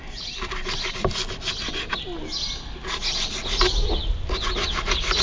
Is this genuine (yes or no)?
yes